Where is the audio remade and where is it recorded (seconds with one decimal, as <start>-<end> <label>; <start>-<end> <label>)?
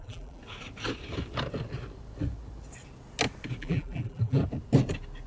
0.0-0.4 remade; 0.4-3.6 recorded; 3.6-4.4 remade; 4.4-5.3 recorded